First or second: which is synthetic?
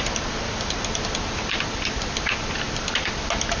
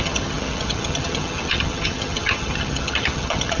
second